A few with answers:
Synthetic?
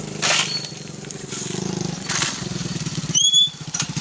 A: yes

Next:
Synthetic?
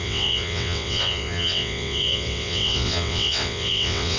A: yes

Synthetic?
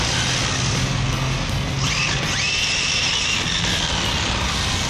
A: no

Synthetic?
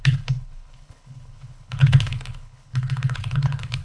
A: yes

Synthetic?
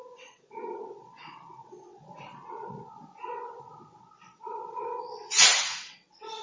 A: yes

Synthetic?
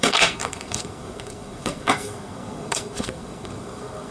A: yes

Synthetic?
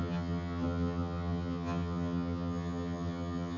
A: yes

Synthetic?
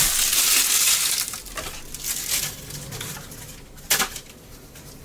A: no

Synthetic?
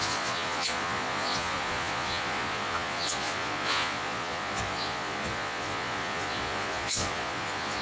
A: yes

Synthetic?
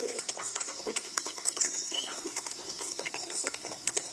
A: yes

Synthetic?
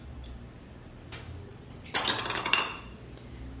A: no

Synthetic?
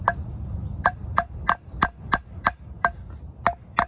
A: no